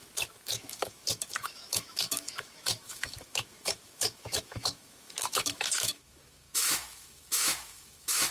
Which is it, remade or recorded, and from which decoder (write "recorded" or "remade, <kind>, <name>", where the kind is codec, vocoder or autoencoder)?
remade, autoencoder, DAC-VAE